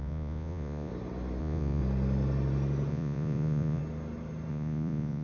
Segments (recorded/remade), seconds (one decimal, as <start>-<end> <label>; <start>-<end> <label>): 0.0-0.9 remade; 0.9-1.4 recorded; 1.4-1.8 remade; 1.8-2.9 recorded; 2.9-3.8 remade; 3.8-4.5 recorded; 4.5-5.2 remade